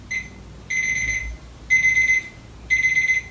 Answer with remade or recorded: recorded